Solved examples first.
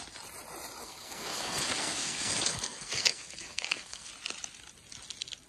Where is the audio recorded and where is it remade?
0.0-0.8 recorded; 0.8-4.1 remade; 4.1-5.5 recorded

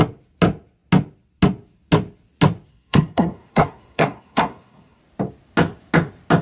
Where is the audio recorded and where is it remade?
0.0-2.7 recorded; 2.7-5.0 remade; 5.0-6.4 recorded